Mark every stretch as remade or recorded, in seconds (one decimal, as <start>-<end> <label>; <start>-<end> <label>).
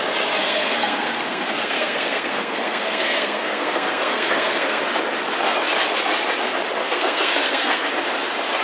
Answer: 0.0-0.4 recorded; 0.4-4.8 remade; 4.8-6.8 recorded; 6.8-7.9 remade; 7.9-8.6 recorded